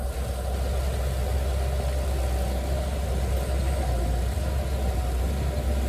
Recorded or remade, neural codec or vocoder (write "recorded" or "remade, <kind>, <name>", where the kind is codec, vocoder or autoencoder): recorded